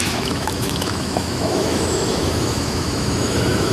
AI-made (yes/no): yes